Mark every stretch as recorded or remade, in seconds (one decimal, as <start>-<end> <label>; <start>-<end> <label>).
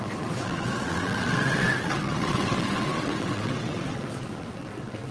0.0-5.1 remade